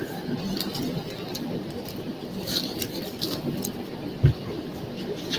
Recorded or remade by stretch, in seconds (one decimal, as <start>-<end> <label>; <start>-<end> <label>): 0.0-5.4 recorded